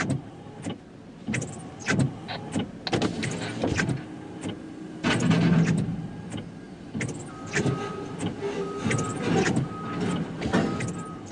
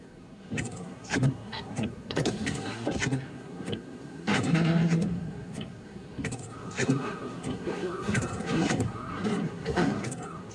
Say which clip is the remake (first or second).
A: second